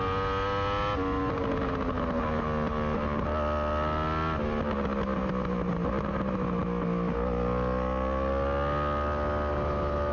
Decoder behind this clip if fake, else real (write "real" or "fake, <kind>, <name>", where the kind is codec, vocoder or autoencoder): real